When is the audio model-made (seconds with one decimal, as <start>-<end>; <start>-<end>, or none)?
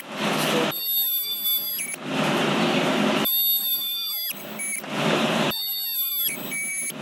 none